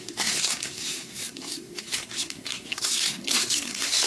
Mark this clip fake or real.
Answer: fake